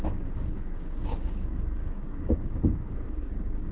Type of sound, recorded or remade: remade